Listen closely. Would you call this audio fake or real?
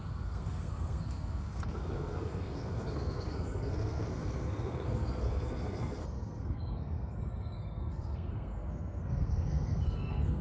fake